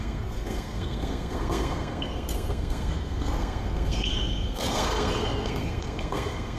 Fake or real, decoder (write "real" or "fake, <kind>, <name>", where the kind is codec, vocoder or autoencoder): fake, codec, SNAC